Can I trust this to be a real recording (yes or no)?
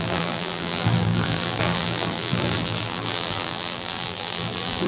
no